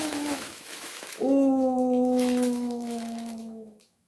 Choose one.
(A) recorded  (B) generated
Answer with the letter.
B